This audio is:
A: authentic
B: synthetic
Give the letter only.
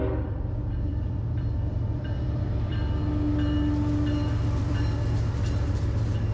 B